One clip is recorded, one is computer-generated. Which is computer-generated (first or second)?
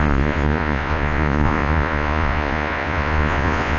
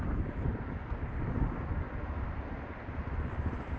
first